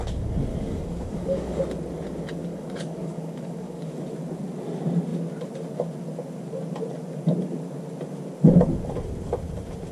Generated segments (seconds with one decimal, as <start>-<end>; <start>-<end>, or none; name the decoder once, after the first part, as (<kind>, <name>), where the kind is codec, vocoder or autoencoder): 0.5-1.6 (codec, DAC); 2.4-4.0